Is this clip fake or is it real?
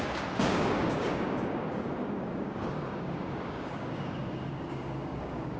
fake